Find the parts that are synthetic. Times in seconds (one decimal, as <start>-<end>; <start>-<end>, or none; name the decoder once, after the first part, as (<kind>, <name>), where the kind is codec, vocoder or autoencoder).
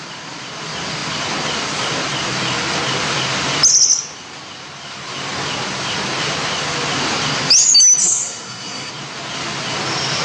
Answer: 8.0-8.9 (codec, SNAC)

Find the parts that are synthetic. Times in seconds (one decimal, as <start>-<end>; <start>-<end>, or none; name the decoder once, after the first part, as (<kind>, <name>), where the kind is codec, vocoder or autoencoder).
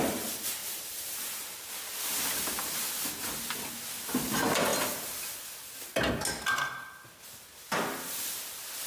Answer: none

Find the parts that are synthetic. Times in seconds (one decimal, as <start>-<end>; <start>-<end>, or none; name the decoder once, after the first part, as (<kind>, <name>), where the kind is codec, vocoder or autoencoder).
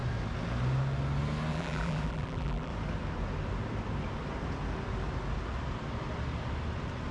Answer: 1.5-2.7 (vocoder, BigVGAN v2)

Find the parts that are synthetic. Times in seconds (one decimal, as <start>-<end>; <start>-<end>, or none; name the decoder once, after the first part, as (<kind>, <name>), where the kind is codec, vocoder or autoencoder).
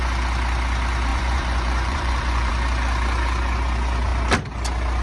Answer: 1.1-2.5 (vocoder, Vocos)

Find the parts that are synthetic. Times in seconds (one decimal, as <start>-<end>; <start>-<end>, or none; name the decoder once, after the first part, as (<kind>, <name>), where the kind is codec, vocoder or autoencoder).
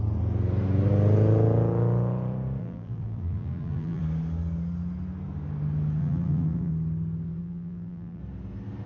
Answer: 2.6-4.0 (vocoder, BigVGAN v2); 6.0-6.7; 7.4-8.2